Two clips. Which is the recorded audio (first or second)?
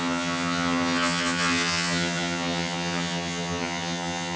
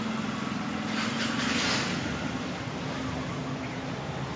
second